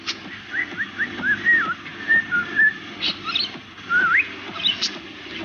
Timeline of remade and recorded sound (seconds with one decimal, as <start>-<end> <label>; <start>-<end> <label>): 0.0-5.4 recorded